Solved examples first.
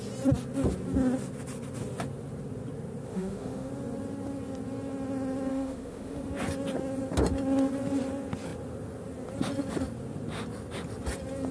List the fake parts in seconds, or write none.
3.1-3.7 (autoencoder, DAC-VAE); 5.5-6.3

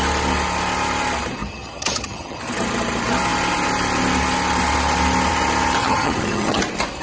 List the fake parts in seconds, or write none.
1.4-2.4 (vocoder, HiFi-GAN); 5.8-6.6

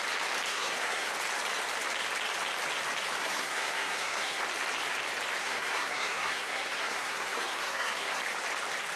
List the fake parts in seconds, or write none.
0.5-1.1 (codec, SNAC); 3.2-4.4; 5.4-8.2